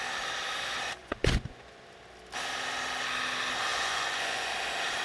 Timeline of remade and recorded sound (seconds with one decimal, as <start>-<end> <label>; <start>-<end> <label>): 0.0-1.0 recorded; 1.0-1.8 remade; 1.8-3.7 recorded; 3.7-4.5 remade; 4.5-5.0 recorded